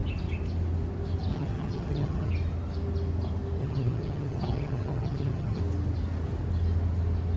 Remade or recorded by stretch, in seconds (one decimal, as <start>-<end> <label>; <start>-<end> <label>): 0.0-1.3 recorded; 1.3-2.3 remade; 2.3-3.6 recorded; 3.6-5.6 remade; 5.6-7.4 recorded